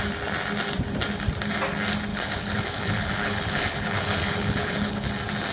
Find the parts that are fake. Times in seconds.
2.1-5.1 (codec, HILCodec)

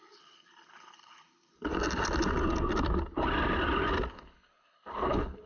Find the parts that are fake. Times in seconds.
0.0-1.7 (codec, HILCodec); 4.1-5.5

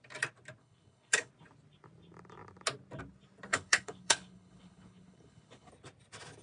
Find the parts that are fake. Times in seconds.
0.6-1.3 (codec, HILCodec); 3.5-5.7

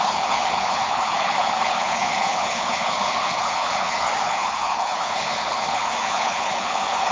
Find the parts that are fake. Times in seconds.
0.0-7.1 (codec, HILCodec)

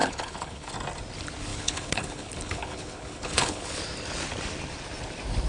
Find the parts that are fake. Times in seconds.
0.0-0.7 (codec, HILCodec); 1.5-3.8

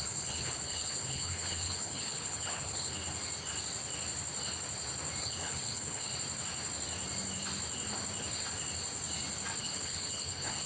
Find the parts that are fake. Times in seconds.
0.0-3.0 (codec, HILCodec); 5.2-6.1; 9.6-10.7